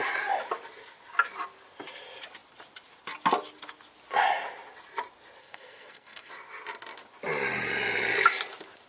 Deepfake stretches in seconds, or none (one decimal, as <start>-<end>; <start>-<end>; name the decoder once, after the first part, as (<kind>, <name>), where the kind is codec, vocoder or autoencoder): 5.4-6.3 (codec, SNAC)